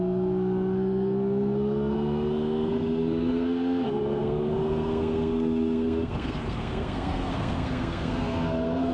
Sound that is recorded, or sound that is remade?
remade